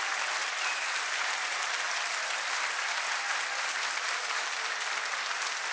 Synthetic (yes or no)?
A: no